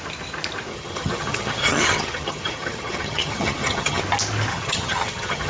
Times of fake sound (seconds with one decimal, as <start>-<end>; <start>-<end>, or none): 0.7-4.0; 4.5-5.5